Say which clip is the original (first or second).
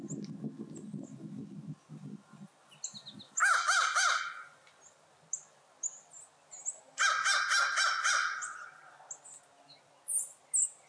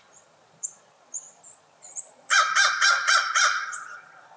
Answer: first